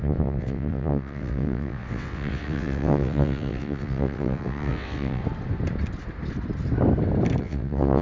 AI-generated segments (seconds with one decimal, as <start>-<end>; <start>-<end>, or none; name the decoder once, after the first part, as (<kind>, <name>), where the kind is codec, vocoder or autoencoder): 0.0-5.2 (vocoder, WaveNeXt); 7.4-8.0

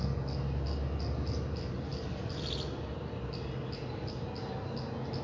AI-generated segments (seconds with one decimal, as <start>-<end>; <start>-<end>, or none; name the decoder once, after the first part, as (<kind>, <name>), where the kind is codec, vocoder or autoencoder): none